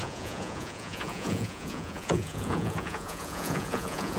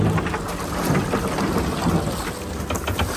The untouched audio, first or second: second